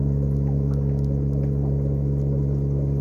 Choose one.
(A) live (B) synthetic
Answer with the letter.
A